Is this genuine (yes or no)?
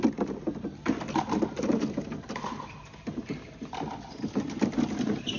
yes